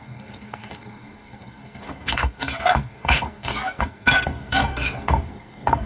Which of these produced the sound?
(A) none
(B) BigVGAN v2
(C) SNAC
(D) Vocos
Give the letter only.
C